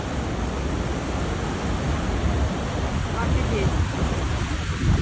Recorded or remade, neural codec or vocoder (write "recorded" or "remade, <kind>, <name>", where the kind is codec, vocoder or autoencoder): recorded